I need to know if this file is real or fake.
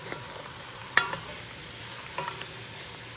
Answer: fake